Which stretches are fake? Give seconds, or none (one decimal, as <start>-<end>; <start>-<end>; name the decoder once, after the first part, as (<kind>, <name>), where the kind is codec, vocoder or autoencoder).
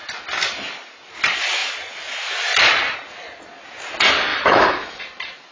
4.3-5.0 (autoencoder, DAC-VAE)